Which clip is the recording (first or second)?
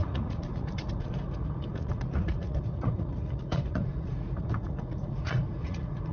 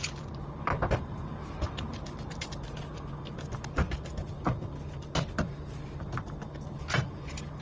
second